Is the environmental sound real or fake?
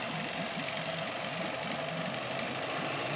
real